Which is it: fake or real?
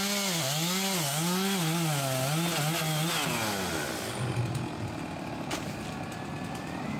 real